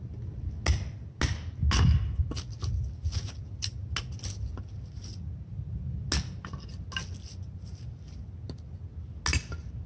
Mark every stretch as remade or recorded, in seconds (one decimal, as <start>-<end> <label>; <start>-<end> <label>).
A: 0.0-9.9 recorded